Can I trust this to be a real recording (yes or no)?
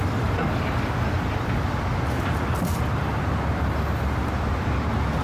yes